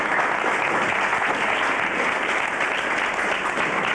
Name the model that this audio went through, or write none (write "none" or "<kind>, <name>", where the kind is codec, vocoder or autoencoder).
none